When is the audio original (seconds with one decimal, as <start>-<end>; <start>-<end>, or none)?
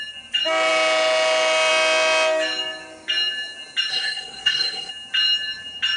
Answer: 0.0-3.9; 4.9-6.0